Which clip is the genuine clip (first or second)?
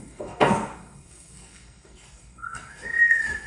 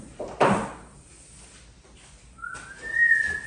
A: second